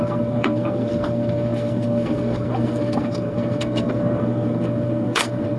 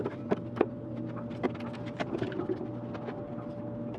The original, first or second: second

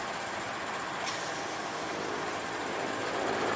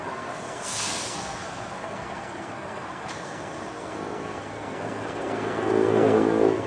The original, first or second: first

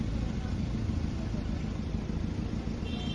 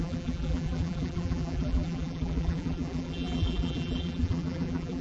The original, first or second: first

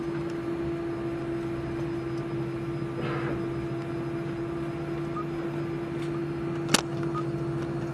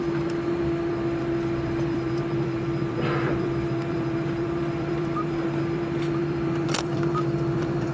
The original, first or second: first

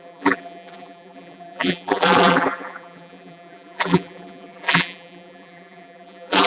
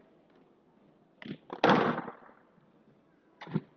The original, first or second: second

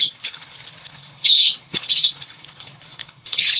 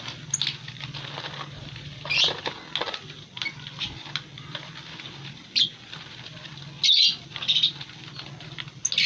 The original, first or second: second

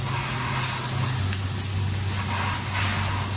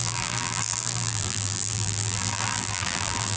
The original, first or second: first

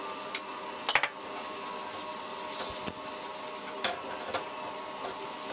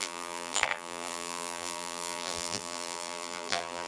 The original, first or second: first